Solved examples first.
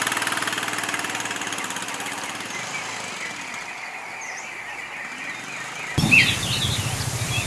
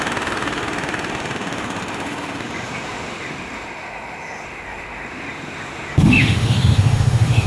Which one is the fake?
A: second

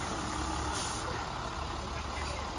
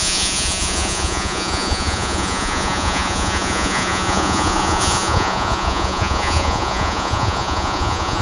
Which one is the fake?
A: second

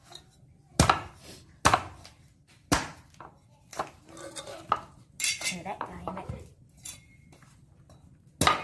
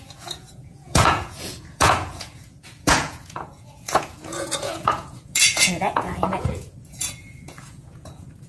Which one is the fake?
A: second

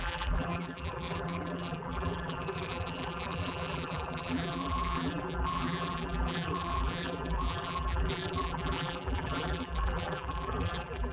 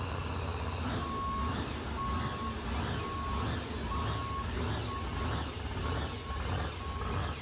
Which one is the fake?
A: first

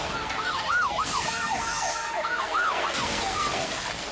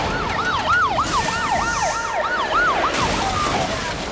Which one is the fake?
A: first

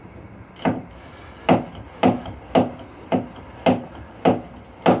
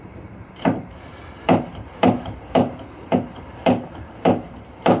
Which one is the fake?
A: second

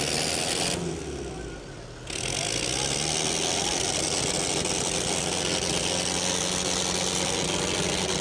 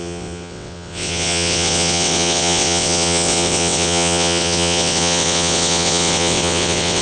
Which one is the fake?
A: second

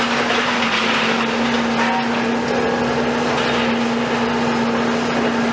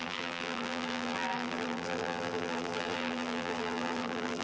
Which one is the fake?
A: second